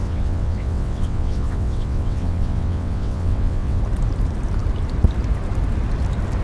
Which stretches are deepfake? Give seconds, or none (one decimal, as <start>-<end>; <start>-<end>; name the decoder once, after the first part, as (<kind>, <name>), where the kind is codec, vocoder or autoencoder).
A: 0.0-3.8 (vocoder, WaveNeXt)